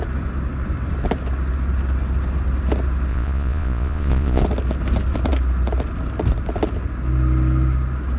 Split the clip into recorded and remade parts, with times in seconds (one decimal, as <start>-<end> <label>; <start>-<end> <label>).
0.0-3.1 recorded; 3.1-4.4 remade; 4.4-8.2 recorded